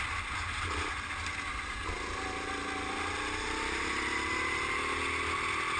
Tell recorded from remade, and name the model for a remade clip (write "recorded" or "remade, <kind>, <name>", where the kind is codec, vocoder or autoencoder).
recorded